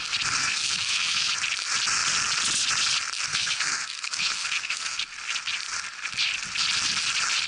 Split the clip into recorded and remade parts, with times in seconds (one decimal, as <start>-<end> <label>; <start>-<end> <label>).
0.0-0.4 recorded; 0.4-1.3 remade; 1.3-3.3 recorded; 3.3-5.0 remade; 5.0-7.5 recorded